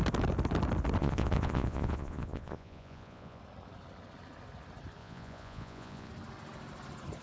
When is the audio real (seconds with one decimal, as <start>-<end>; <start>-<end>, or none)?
0.0-1.0; 3.4-5.0; 6.1-7.2